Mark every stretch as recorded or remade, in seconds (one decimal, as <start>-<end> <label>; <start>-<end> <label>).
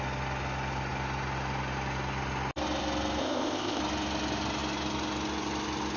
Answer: 0.0-3.2 recorded; 3.2-3.8 remade; 3.8-6.0 recorded